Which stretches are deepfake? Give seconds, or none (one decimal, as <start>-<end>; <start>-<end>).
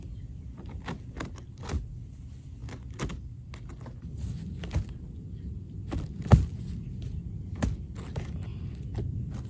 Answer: none